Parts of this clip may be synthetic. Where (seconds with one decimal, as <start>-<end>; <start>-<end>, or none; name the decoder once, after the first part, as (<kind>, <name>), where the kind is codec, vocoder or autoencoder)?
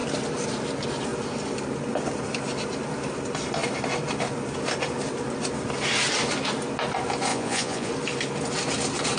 7.3-7.9 (vocoder, Vocos)